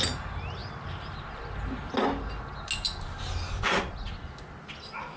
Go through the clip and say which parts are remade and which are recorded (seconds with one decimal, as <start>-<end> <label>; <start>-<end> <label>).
0.0-5.2 recorded

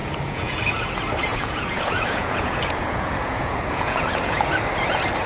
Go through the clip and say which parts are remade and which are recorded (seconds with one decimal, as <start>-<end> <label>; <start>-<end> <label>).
0.0-0.6 remade; 0.6-1.3 recorded; 1.3-4.5 remade; 4.5-5.3 recorded

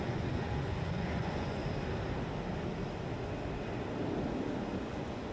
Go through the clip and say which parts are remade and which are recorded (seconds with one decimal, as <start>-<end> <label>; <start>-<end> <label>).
0.0-1.6 remade; 1.6-4.8 recorded; 4.8-5.3 remade

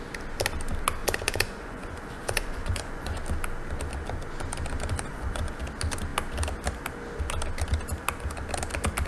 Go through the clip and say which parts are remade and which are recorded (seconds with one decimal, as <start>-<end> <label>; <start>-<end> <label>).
0.0-1.0 recorded; 1.0-3.2 remade; 3.2-5.1 recorded; 5.1-5.6 remade; 5.6-9.1 recorded

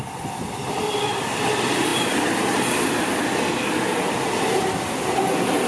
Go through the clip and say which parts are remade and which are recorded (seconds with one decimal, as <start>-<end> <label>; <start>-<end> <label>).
0.0-5.7 recorded